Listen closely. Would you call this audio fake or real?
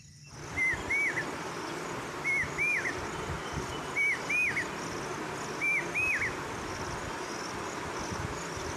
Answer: real